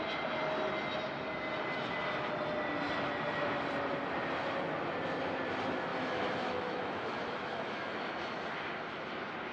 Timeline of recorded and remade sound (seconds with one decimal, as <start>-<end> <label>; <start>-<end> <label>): 0.0-5.9 recorded; 5.9-8.1 remade; 8.1-9.5 recorded